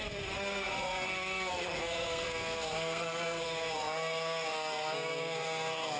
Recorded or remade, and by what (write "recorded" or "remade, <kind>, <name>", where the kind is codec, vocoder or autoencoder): remade, codec, SNAC